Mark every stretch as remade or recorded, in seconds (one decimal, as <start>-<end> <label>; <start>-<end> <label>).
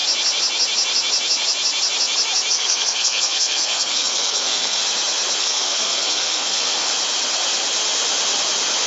0.0-2.5 recorded; 2.5-4.8 remade; 4.8-5.4 recorded; 5.4-6.9 remade; 6.9-8.9 recorded